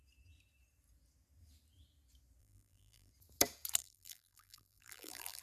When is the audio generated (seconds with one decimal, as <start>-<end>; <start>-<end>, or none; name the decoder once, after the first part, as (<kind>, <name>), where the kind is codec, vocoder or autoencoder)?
2.4-3.1 (vocoder, BigVGAN v2); 3.8-5.4